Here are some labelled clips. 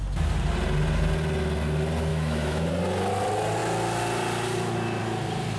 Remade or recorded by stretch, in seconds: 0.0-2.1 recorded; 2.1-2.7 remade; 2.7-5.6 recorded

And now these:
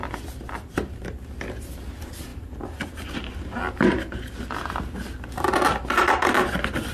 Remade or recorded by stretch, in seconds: 0.0-6.9 recorded

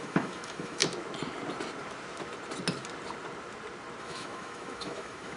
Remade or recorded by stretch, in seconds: 0.0-0.8 remade; 0.8-4.0 recorded; 4.0-5.4 remade

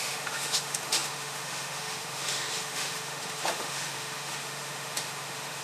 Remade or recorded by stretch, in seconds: 0.0-5.6 remade